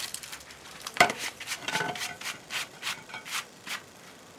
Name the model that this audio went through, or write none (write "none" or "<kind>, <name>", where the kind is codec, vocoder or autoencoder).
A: vocoder, BigVGAN v2